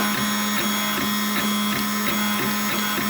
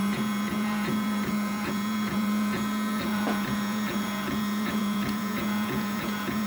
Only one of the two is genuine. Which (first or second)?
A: first